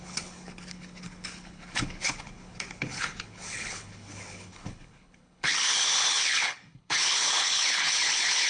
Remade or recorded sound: remade